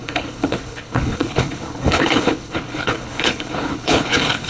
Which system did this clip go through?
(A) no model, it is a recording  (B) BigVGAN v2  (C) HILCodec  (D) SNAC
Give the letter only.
C